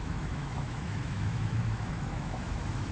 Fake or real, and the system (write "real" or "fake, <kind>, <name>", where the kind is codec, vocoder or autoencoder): fake, autoencoder, DAC-VAE